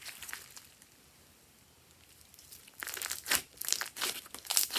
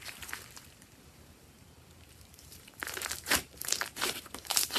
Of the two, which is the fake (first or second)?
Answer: second